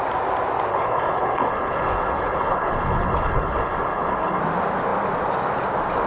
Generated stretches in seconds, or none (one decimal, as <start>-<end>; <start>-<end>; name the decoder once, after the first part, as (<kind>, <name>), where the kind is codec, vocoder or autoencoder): 0.7-4.4 (codec, HILCodec)